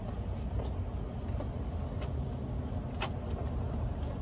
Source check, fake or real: real